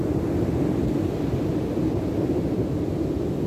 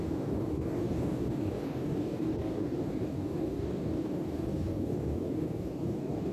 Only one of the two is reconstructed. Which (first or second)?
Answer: second